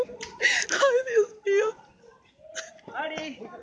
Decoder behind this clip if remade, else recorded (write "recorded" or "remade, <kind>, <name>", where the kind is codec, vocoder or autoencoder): recorded